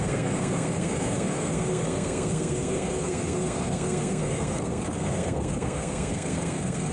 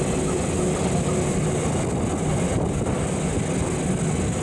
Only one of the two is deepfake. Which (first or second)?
first